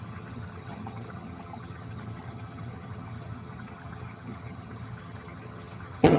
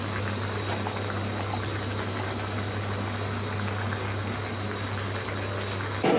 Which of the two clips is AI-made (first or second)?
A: first